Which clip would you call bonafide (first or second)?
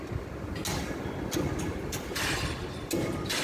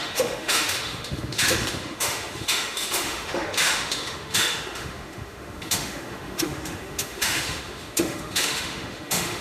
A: first